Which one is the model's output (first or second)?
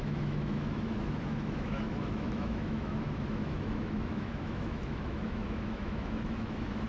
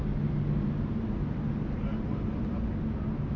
first